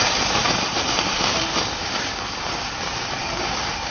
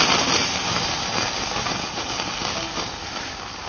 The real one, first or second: second